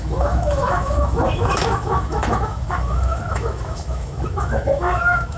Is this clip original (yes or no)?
no